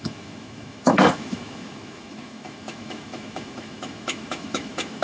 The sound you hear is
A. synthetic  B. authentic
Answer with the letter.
A